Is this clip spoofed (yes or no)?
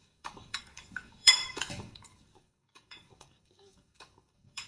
yes